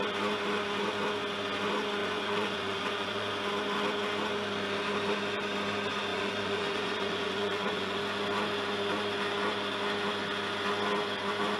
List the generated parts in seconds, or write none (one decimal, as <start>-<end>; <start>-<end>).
2.0-3.3; 6.1-8.0